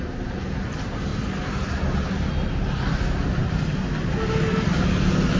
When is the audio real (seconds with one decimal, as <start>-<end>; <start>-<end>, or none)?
0.0-5.4